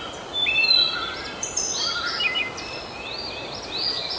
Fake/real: fake